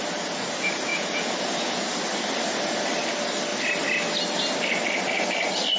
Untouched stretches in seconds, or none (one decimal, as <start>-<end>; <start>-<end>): 0.0-0.9; 1.8-5.8